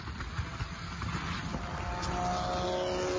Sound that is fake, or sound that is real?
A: real